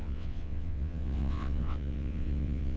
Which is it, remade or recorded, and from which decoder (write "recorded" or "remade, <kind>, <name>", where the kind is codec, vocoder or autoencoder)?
remade, vocoder, WaveNeXt